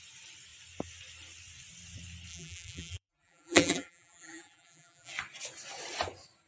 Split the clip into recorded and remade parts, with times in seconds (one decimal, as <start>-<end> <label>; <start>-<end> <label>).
0.0-2.3 recorded; 2.3-5.1 remade; 5.1-6.5 recorded

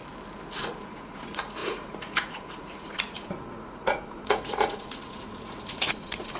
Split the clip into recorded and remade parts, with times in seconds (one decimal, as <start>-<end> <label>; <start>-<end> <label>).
0.0-0.8 recorded; 0.8-6.4 remade

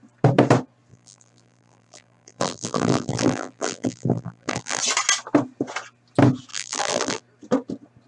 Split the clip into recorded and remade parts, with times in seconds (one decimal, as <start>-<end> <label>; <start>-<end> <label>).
0.0-0.9 recorded; 0.9-4.8 remade; 4.8-6.5 recorded; 6.5-7.2 remade; 7.2-8.1 recorded

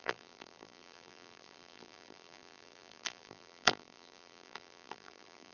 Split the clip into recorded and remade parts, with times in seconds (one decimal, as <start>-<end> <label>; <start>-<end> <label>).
0.0-5.5 remade

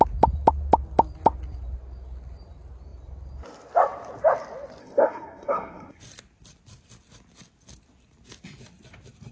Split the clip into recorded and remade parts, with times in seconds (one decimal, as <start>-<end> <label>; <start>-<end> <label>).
0.0-4.8 recorded; 4.8-6.0 remade; 6.0-9.3 recorded

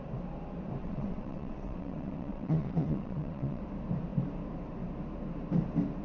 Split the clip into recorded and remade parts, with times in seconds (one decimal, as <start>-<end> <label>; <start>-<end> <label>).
0.0-0.8 recorded; 0.8-3.6 remade; 3.6-6.0 recorded